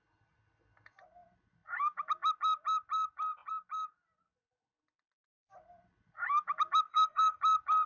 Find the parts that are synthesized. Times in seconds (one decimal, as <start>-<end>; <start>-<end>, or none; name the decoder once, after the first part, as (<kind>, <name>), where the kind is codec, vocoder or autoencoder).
6.9-7.4 (codec, SNAC)